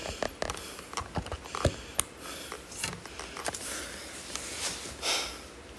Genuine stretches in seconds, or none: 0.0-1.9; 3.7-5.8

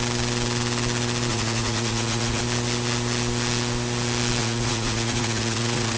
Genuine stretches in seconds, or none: 0.0-1.3; 2.4-4.4

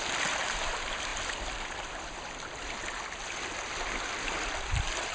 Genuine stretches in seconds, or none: 0.0-5.1

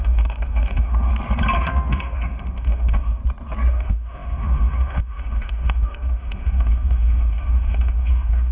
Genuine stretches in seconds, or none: 1.1-1.6; 3.2-3.7